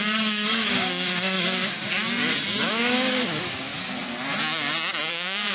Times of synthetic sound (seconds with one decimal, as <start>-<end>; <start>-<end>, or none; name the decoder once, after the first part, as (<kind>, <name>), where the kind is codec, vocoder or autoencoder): 0.0-1.9 (codec, DAC); 2.7-3.7; 5.1-5.5